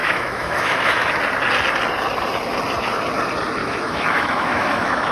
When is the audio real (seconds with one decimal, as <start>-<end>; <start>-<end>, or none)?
1.2-3.6